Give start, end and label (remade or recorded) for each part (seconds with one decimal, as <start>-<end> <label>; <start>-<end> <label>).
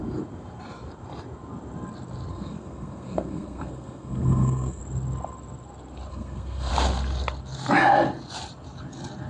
0.0-2.3 recorded; 2.3-4.8 remade; 4.8-6.1 recorded; 6.1-6.7 remade; 6.7-9.3 recorded